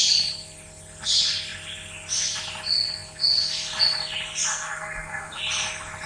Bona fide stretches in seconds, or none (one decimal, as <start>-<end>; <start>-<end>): 0.0-4.5; 5.4-6.1